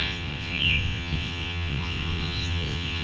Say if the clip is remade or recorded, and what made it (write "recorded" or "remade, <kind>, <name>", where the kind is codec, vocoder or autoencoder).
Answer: remade, vocoder, WaveNeXt